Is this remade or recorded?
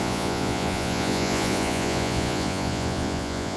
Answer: remade